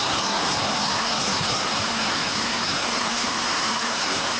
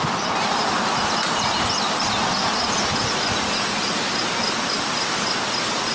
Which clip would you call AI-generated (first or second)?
first